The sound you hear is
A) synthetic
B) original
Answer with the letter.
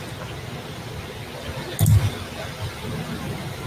B